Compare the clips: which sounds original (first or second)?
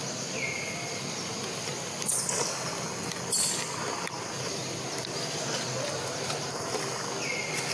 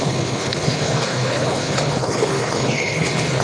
first